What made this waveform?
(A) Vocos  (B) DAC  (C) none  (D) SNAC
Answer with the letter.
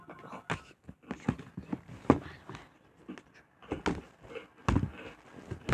C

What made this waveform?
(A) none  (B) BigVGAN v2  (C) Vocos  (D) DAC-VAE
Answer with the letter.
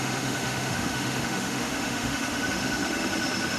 D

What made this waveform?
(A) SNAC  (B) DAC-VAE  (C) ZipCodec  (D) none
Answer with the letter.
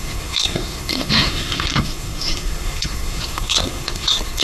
A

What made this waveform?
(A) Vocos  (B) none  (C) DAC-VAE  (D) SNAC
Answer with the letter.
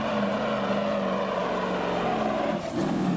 B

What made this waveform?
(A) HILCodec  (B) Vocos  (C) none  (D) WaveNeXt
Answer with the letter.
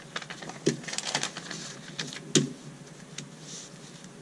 C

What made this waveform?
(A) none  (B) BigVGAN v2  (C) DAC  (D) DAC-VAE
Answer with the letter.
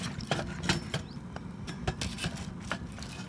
A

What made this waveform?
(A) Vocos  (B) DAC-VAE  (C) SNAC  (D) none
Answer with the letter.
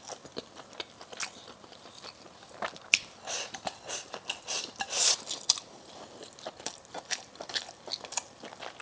D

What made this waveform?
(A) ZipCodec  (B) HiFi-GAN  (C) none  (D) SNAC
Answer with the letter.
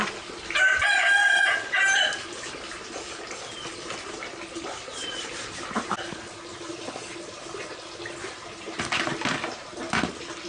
C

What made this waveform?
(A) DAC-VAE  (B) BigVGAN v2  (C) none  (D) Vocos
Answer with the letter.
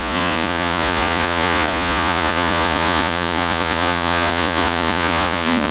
D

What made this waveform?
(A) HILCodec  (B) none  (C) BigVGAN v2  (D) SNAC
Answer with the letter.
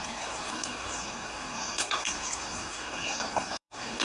D